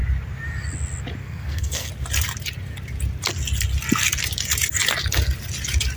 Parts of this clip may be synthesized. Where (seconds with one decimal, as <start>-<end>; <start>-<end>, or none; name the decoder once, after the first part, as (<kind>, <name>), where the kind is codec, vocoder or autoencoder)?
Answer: 1.2-1.9 (codec, SNAC)